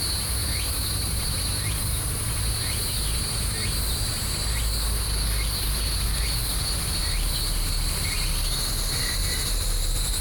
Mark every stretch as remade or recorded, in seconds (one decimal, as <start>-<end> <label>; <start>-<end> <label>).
0.0-0.4 recorded; 0.4-4.7 remade; 4.7-10.2 recorded